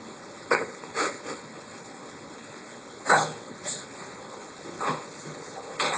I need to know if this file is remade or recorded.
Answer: remade